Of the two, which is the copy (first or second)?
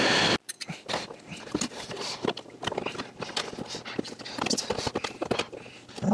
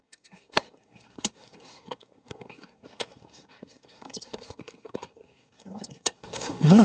second